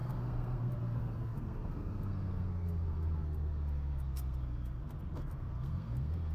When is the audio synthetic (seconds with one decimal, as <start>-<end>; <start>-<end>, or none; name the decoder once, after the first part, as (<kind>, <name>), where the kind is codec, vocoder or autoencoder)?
0.0-6.3 (codec, SNAC)